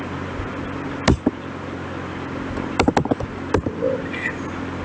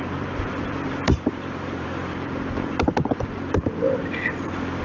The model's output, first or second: second